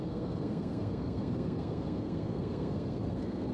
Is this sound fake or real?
fake